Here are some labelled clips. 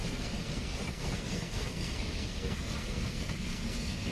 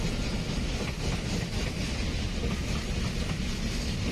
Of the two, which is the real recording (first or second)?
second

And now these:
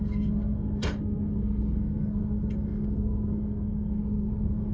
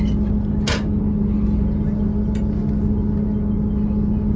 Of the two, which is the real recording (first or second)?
second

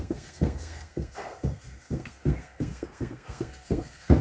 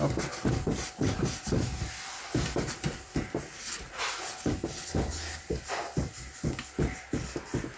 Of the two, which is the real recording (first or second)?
second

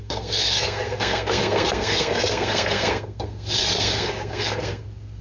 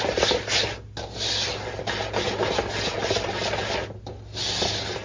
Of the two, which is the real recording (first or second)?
second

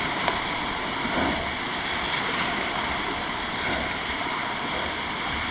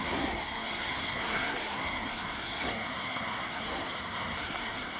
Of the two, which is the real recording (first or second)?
first